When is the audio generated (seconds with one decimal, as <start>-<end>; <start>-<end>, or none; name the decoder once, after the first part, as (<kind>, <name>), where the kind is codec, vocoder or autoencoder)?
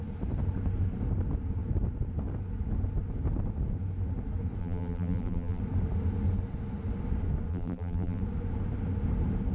4.6-5.6 (vocoder, BigVGAN v2); 7.5-8.2